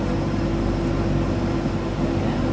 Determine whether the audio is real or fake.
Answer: real